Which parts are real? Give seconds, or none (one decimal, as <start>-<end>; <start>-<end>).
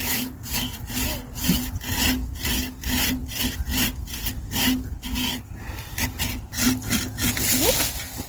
0.0-8.3